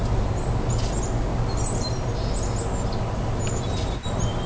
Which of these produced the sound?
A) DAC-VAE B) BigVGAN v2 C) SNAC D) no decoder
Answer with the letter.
D